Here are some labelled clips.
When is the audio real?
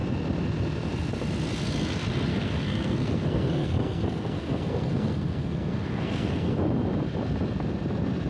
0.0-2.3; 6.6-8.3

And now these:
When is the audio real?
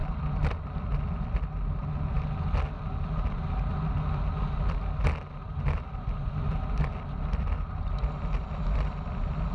0.0-9.5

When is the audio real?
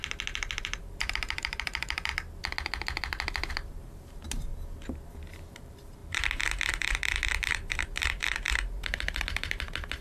0.0-0.6; 2.1-3.5; 4.5-5.3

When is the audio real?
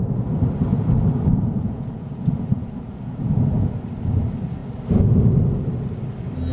0.0-0.7; 3.7-6.5